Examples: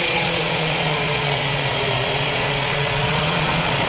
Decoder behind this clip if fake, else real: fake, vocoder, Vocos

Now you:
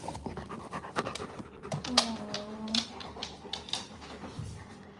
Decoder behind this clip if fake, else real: real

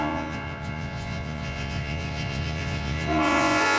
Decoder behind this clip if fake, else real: fake, vocoder, Vocos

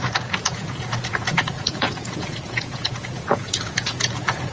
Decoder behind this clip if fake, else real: fake, vocoder, Vocos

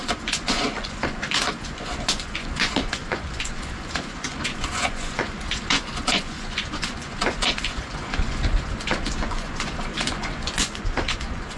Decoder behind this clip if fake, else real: fake, vocoder, Vocos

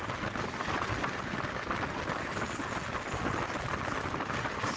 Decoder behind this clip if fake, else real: real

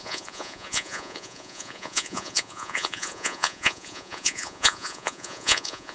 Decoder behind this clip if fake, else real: fake, vocoder, Vocos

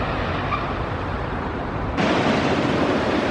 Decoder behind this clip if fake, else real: real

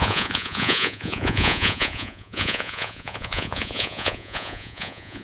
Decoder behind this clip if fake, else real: fake, vocoder, Vocos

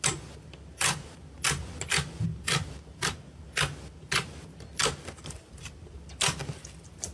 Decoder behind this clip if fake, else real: real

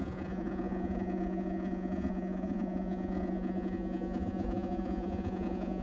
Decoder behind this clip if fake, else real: fake, vocoder, Vocos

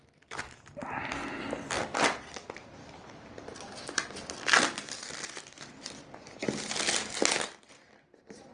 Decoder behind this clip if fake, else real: real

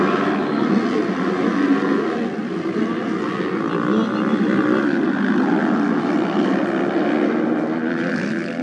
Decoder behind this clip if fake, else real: real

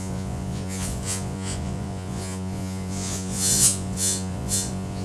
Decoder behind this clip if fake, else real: fake, vocoder, Vocos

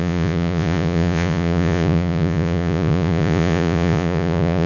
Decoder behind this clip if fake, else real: fake, vocoder, Vocos